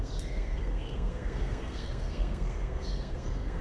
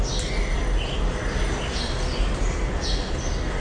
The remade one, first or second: first